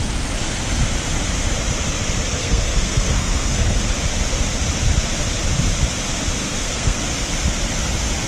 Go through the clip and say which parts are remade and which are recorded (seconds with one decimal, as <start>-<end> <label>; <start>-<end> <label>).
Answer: 0.0-2.4 recorded; 2.4-3.8 remade; 3.8-6.4 recorded; 6.4-7.0 remade; 7.0-8.3 recorded